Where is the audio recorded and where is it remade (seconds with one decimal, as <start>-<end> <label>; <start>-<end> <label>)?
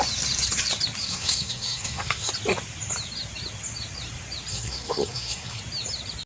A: 0.0-1.0 recorded; 1.0-2.3 remade; 2.3-4.5 recorded; 4.5-5.6 remade; 5.6-6.3 recorded